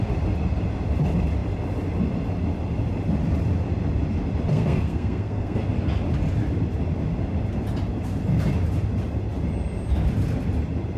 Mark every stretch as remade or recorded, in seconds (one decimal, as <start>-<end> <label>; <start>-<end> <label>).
0.0-4.5 recorded; 4.5-5.7 remade; 5.7-11.0 recorded